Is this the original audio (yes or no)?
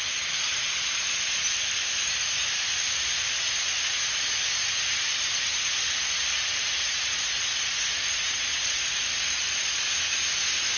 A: yes